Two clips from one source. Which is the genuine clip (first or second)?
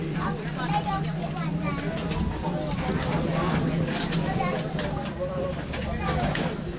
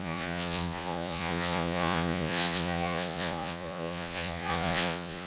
first